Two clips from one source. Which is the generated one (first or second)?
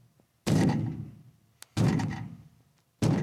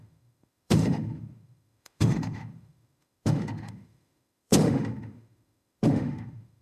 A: second